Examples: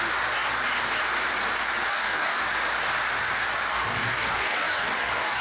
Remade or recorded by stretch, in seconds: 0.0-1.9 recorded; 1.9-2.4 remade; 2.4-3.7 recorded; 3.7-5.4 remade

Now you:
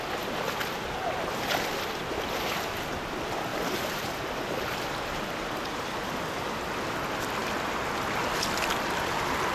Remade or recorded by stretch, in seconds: 0.0-3.5 recorded; 3.5-6.2 remade; 6.2-9.5 recorded

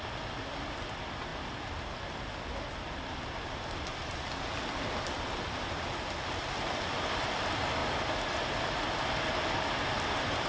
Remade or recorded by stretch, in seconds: 0.0-10.5 recorded